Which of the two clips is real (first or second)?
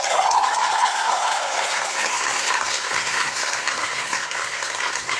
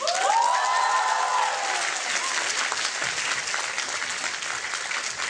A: second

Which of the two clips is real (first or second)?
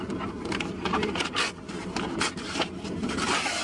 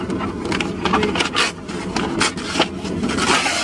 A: second